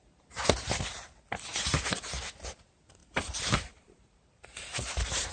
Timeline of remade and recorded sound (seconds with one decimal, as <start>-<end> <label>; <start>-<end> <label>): 0.0-1.5 recorded; 1.5-2.1 remade; 2.1-3.0 recorded; 3.0-5.3 remade